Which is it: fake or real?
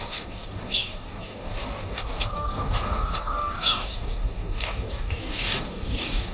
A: fake